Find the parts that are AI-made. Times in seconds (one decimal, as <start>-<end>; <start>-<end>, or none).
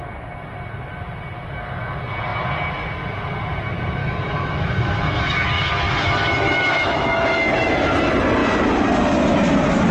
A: 4.0-7.7